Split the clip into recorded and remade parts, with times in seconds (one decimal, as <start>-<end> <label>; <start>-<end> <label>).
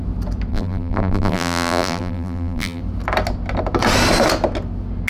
0.0-0.5 recorded; 0.5-2.8 remade; 2.8-5.1 recorded